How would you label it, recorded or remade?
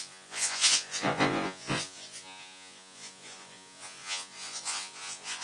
remade